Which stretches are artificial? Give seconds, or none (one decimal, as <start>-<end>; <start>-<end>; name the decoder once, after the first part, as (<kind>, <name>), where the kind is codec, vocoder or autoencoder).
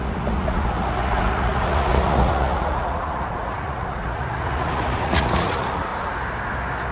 0.0-5.9 (vocoder, Vocos)